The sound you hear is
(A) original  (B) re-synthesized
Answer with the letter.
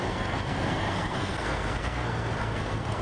B